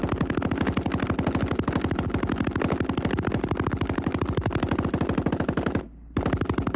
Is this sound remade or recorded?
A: recorded